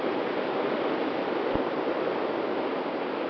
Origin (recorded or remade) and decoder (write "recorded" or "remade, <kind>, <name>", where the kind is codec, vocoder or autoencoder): recorded